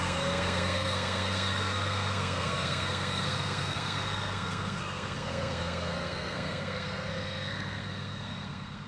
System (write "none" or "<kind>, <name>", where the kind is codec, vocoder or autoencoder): codec, SNAC